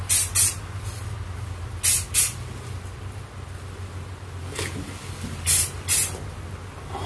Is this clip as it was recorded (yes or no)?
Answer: yes